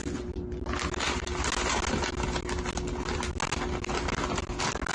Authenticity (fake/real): real